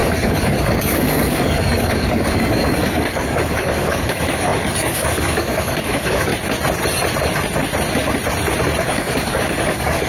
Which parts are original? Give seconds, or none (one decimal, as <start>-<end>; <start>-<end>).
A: 6.3-8.8